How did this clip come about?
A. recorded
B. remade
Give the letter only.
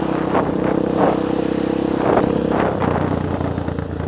A